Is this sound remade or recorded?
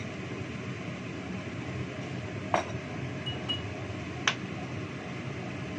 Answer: recorded